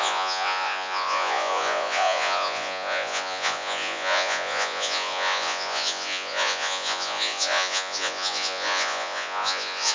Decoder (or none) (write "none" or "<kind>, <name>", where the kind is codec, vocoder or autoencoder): vocoder, Vocos